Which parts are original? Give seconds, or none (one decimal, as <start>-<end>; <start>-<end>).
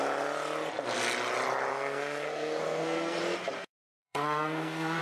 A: 0.0-1.7; 3.2-3.6